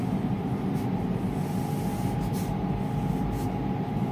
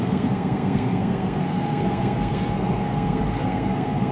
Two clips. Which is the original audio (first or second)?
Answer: first